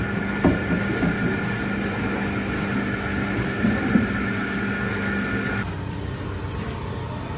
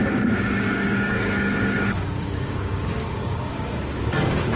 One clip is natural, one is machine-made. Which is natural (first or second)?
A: first